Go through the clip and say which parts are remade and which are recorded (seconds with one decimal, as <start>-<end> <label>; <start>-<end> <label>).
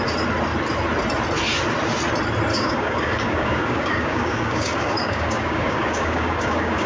0.0-2.5 recorded; 2.5-6.9 remade